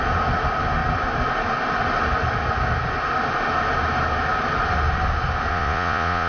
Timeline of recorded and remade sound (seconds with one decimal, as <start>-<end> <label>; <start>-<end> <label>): 0.0-5.5 recorded; 5.5-6.3 remade

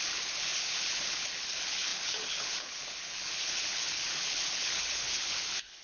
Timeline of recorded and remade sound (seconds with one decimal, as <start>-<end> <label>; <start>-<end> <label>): 0.0-5.8 remade

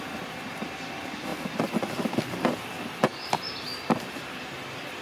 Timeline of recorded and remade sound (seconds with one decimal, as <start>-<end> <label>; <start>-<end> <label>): 0.0-5.0 recorded

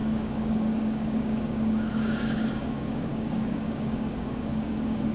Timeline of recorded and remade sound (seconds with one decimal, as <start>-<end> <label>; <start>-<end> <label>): 0.0-5.1 remade

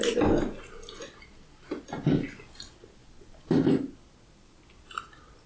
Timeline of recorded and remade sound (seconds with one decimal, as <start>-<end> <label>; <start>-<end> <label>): 0.0-5.5 recorded

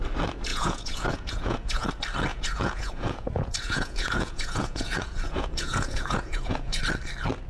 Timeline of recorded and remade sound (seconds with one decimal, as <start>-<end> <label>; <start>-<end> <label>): 0.0-0.5 recorded; 0.5-1.9 remade; 1.9-2.3 recorded; 2.3-6.8 remade; 6.8-7.5 recorded

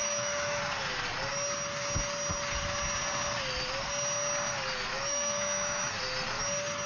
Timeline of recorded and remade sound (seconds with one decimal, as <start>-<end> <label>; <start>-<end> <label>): 0.0-0.6 remade; 0.6-4.9 recorded; 4.9-5.8 remade; 5.8-6.9 recorded

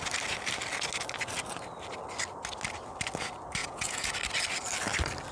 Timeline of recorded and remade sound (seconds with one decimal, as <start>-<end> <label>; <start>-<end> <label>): 0.0-3.6 recorded; 3.6-4.1 remade; 4.1-5.3 recorded